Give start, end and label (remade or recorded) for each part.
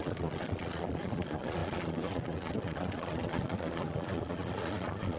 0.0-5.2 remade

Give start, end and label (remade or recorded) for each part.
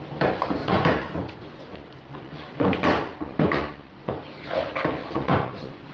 0.0-0.6 recorded; 0.6-4.1 remade; 4.1-5.0 recorded; 5.0-5.9 remade